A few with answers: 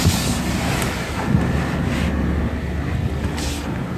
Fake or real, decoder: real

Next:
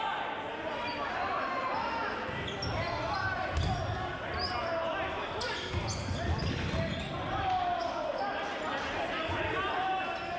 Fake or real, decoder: real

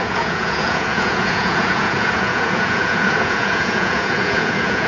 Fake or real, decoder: fake, vocoder, Vocos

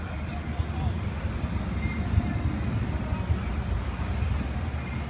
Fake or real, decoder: real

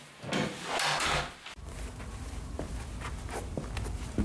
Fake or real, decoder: real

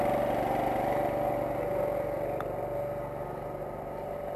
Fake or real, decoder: real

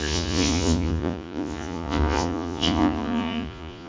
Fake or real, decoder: fake, vocoder, Vocos